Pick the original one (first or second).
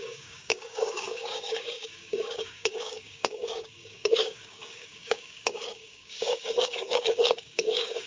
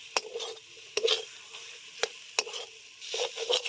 second